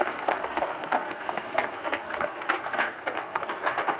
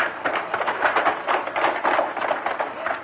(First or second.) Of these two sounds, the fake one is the first